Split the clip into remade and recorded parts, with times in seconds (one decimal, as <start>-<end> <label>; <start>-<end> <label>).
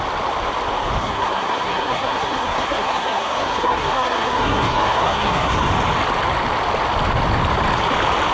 0.0-1.0 recorded; 1.0-5.7 remade; 5.7-8.3 recorded